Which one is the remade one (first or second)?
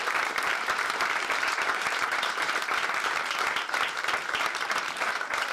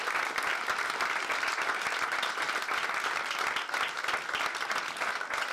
first